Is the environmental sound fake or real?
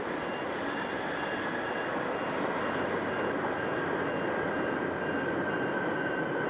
real